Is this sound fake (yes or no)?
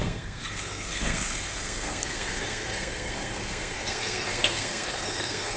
yes